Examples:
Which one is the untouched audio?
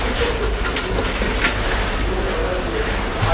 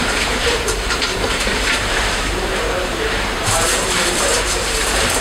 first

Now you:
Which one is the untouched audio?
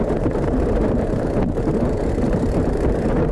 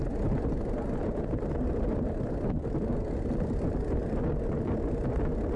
second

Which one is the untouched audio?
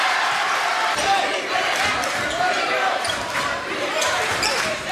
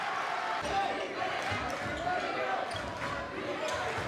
second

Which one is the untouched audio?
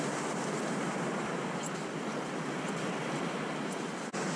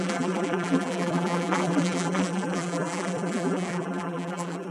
first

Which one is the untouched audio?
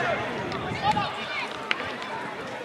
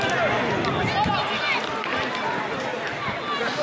second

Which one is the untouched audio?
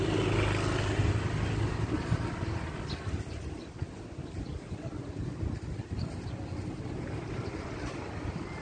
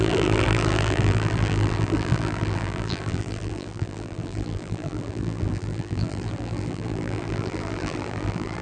first